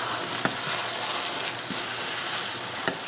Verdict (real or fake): real